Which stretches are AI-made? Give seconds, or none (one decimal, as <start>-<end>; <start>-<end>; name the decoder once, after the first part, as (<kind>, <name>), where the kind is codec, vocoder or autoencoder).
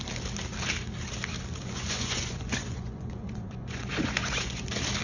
1.6-4.6 (vocoder, Vocos)